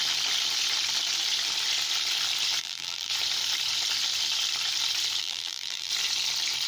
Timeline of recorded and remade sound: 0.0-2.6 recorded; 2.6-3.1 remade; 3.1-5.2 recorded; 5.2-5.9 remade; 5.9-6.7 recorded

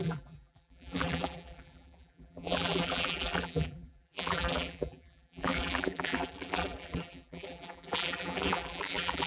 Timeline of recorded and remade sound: 0.0-9.3 remade

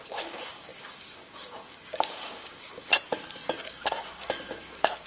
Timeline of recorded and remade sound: 0.0-2.9 remade; 2.9-3.6 recorded; 3.6-5.1 remade